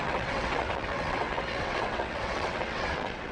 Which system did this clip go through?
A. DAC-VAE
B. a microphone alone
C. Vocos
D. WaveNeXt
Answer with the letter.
D